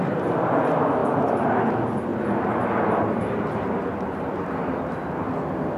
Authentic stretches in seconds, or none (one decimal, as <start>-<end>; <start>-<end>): 0.0-5.8